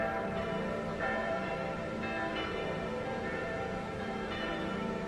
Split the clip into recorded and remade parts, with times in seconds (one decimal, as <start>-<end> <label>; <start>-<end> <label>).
0.0-0.9 recorded; 0.9-1.5 remade; 1.5-2.3 recorded; 2.3-4.5 remade; 4.5-5.1 recorded